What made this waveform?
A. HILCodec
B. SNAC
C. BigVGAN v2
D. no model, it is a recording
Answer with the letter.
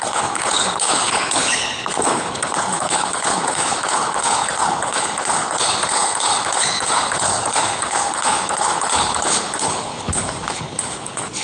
A